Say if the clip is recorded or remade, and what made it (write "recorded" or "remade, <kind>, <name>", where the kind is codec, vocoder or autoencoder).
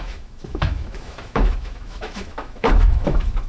remade, autoencoder, DAC-VAE